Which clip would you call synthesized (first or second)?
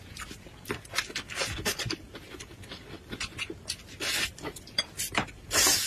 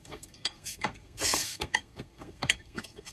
second